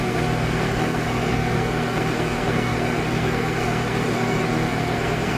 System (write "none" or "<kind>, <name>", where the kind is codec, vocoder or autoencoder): codec, SNAC